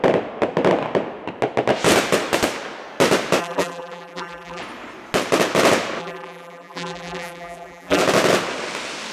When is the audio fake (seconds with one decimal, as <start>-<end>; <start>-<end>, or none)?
3.4-4.6; 6.0-8.0